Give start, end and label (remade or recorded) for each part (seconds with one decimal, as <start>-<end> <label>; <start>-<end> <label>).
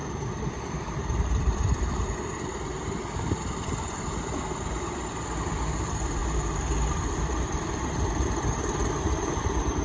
0.0-6.2 remade; 6.2-6.9 recorded; 6.9-9.8 remade